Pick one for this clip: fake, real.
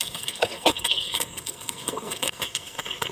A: fake